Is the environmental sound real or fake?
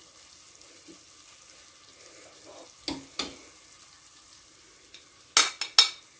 real